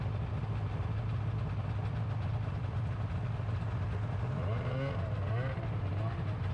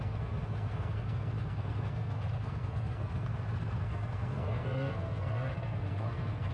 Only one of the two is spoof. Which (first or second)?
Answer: second